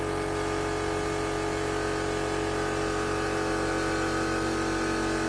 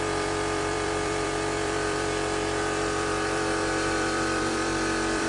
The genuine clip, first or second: first